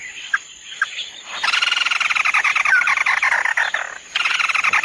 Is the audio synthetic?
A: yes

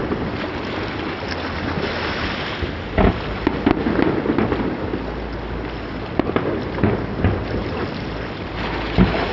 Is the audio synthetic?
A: no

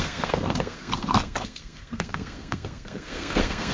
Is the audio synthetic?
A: yes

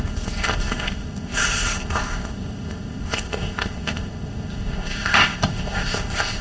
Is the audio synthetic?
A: yes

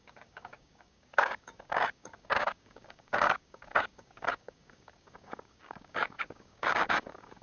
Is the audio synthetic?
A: yes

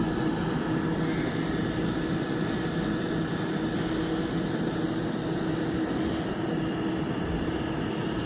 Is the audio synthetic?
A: no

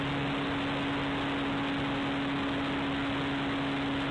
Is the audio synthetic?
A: no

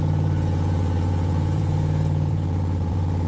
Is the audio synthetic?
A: yes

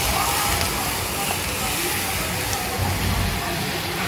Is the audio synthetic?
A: no